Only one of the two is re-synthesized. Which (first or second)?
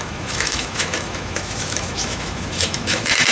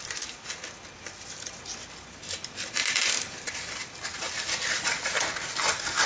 first